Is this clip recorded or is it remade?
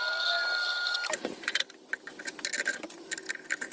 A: recorded